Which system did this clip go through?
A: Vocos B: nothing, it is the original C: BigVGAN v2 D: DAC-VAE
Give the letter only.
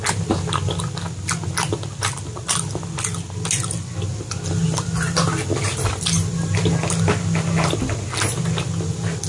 B